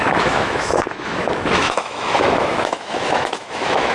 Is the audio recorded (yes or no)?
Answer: no